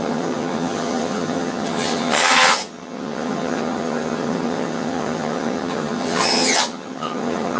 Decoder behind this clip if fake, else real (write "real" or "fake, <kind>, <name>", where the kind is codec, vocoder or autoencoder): fake, vocoder, HiFi-GAN